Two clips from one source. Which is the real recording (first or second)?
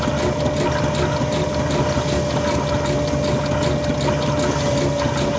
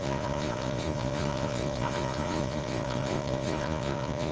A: first